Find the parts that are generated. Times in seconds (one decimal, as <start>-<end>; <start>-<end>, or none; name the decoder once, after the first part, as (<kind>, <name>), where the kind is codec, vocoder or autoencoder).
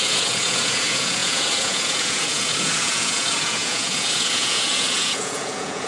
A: 0.0-5.9 (vocoder, Vocos)